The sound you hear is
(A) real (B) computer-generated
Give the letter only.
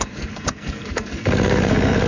B